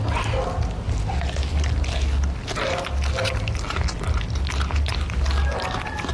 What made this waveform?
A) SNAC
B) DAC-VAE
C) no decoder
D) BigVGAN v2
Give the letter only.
C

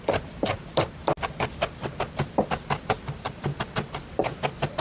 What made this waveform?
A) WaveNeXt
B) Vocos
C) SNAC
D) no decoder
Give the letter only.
D